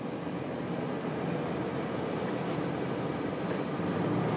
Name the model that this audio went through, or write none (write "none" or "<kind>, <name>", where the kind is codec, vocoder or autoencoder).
none